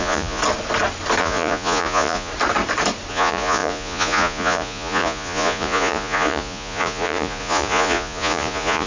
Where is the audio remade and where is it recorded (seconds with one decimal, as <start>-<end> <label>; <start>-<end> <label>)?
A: 0.0-0.4 remade; 0.4-1.2 recorded; 1.2-2.3 remade; 2.3-3.1 recorded; 3.1-8.9 remade